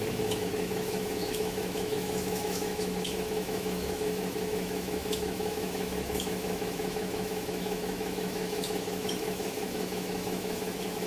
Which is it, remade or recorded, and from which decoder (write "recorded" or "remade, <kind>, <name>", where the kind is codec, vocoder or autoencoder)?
remade, autoencoder, DAC-VAE